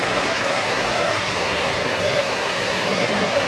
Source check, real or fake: fake